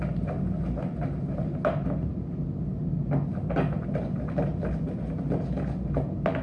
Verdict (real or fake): real